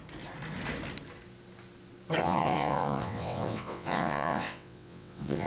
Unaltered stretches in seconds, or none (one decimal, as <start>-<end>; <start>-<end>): 0.0-2.2